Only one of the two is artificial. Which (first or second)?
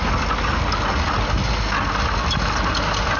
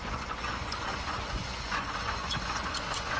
second